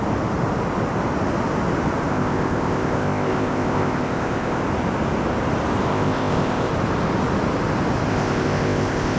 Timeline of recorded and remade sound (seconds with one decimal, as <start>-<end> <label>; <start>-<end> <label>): 0.0-2.1 recorded; 2.1-4.6 remade; 4.6-5.9 recorded; 5.9-6.7 remade; 6.7-8.1 recorded; 8.1-9.2 remade